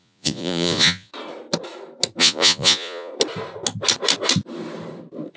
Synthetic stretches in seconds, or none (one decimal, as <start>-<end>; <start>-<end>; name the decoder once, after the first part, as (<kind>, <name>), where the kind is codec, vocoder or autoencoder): 0.0-1.1 (vocoder, Vocos); 2.2-3.1